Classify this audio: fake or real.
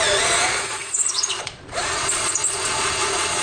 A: fake